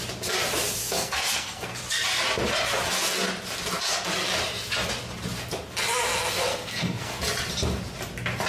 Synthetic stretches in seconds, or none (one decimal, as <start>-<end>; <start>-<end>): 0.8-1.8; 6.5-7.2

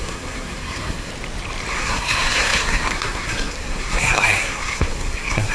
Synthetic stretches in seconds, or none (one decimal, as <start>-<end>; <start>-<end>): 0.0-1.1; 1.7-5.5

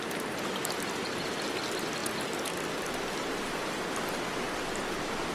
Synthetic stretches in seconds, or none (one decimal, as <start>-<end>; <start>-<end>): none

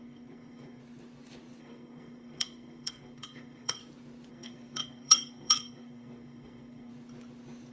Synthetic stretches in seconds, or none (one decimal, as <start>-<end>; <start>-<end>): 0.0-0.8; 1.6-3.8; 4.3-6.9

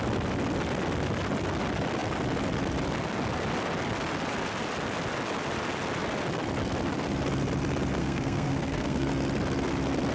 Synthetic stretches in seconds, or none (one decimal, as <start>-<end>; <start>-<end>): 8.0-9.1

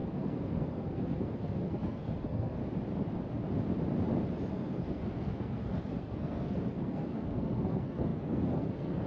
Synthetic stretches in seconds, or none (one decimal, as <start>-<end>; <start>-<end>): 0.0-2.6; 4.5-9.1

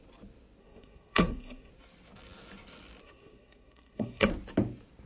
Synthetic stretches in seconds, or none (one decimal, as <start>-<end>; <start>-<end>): 0.6-1.7; 3.0-4.3